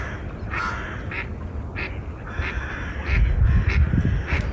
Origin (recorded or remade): recorded